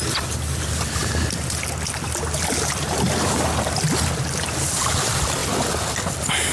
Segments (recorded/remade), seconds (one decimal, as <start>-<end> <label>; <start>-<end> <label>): 0.0-6.5 recorded